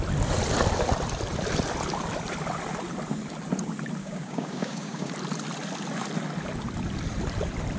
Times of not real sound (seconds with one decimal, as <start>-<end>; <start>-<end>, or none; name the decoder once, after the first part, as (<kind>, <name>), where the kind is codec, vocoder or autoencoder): 4.0-5.1 (codec, DAC)